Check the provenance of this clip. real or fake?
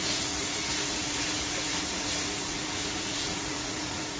fake